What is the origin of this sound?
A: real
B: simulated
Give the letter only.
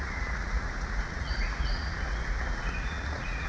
B